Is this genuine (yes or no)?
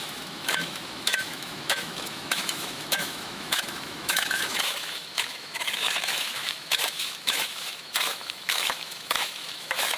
no